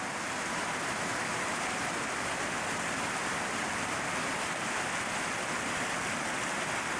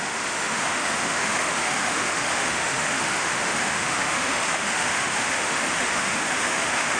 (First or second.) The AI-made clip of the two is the second